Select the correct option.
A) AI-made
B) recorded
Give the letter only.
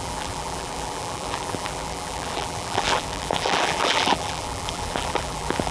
A